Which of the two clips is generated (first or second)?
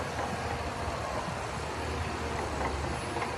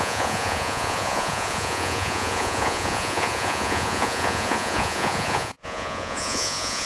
second